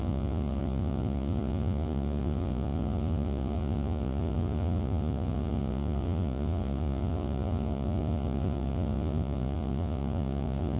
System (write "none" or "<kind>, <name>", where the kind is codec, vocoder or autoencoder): vocoder, Vocos